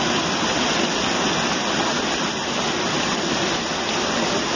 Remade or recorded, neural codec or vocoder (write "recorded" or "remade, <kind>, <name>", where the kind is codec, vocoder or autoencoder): recorded